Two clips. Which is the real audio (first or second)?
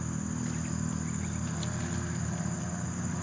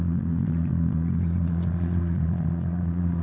first